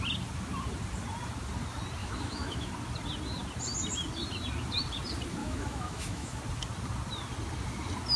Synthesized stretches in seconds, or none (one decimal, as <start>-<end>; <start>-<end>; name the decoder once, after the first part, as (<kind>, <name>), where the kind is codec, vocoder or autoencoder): 2.0-2.7 (autoencoder, DAC-VAE); 5.4-6.4